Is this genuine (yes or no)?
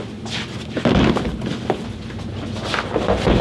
yes